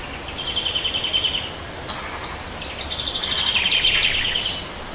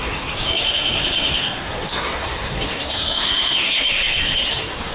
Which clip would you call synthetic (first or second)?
second